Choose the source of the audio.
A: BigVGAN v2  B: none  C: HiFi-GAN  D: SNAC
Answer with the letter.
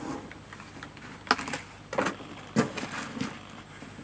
B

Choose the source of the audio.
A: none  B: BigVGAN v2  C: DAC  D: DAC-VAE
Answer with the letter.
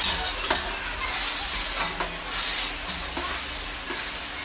A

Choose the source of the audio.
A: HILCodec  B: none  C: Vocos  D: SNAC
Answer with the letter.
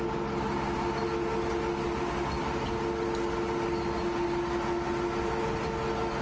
B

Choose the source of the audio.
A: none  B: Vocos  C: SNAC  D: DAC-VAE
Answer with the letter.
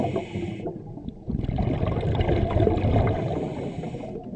A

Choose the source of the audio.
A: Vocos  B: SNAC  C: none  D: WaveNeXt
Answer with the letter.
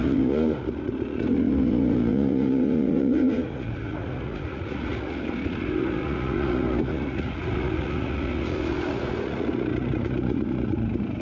A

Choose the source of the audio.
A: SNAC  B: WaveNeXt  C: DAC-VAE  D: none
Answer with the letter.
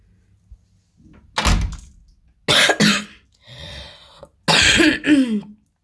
D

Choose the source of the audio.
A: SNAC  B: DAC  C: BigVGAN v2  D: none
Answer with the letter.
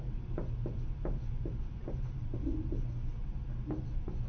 C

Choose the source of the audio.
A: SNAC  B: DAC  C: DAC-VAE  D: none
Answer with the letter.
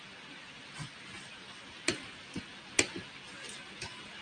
D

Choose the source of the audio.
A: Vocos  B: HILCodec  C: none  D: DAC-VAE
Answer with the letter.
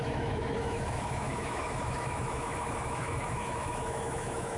D